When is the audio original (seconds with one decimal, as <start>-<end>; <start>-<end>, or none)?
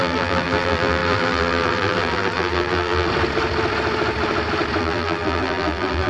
3.1-4.8